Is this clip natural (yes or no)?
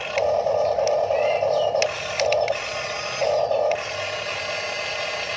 yes